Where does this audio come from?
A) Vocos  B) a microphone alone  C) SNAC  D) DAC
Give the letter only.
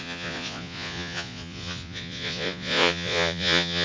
A